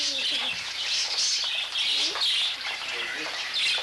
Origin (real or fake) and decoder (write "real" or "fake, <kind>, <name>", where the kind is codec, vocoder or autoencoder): real